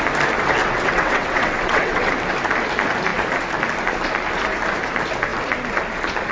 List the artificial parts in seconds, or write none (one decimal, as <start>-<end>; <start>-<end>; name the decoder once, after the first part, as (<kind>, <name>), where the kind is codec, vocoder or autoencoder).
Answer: 0.6-2.1 (vocoder, WaveNeXt)